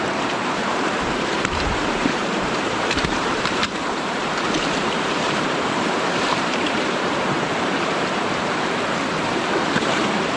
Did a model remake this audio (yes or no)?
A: yes